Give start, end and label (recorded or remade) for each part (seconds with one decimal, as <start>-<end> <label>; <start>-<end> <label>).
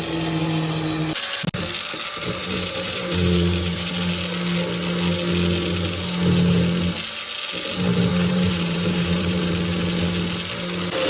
0.0-2.4 recorded; 2.4-3.9 remade; 3.9-8.1 recorded; 8.1-9.5 remade; 9.5-11.1 recorded